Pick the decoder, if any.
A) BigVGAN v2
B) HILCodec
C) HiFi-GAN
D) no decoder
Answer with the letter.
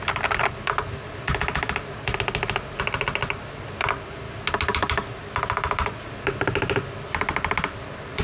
D